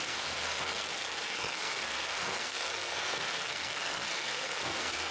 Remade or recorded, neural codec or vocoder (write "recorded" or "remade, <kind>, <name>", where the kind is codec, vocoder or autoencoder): remade, codec, SNAC